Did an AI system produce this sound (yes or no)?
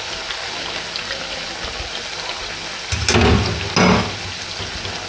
no